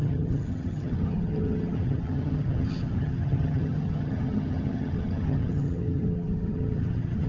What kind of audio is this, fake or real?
fake